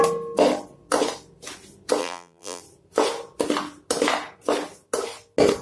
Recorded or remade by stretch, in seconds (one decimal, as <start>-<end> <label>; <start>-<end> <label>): 0.0-2.0 recorded; 2.0-2.6 remade; 2.6-5.6 recorded